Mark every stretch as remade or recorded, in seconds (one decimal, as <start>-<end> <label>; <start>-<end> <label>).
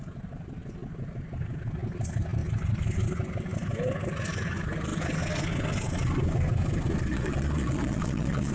0.0-7.1 recorded; 7.1-8.5 remade